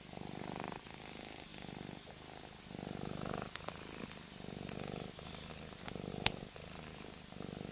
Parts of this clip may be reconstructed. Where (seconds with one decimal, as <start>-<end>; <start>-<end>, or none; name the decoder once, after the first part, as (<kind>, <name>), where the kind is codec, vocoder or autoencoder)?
none